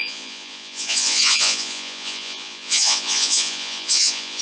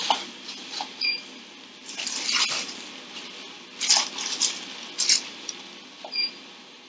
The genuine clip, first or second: second